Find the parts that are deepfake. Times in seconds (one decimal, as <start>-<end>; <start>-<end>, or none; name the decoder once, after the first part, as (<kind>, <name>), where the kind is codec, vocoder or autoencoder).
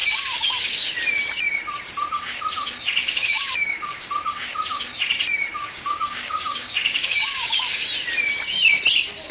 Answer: 0.0-0.9 (codec, DAC); 3.0-4.1; 5.6-7.8